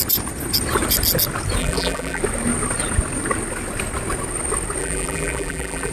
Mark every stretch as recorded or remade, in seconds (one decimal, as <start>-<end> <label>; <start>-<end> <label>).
0.0-1.6 recorded; 1.6-2.2 remade; 2.2-4.8 recorded; 4.8-5.9 remade